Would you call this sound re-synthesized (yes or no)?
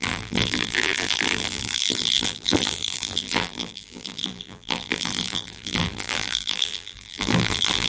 yes